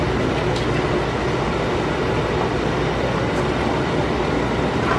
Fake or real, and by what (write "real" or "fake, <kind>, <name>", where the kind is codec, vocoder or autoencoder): real